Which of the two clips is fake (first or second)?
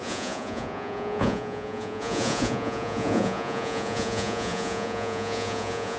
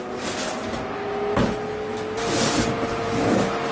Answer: first